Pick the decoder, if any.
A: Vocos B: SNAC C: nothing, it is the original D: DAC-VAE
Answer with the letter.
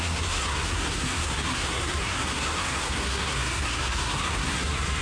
B